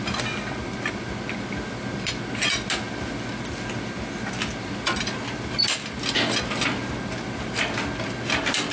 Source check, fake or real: real